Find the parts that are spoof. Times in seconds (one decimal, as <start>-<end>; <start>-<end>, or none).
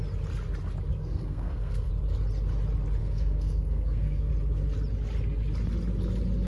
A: 0.9-1.9; 3.0-4.3